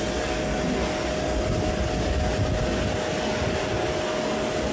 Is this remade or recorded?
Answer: recorded